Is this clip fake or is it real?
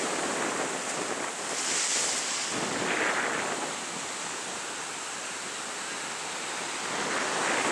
real